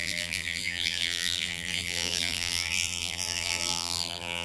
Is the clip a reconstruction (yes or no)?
yes